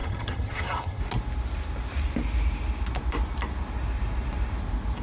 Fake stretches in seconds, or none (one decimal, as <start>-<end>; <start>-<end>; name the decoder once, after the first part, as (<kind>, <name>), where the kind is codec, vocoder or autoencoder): 0.0-1.0 (vocoder, HiFi-GAN)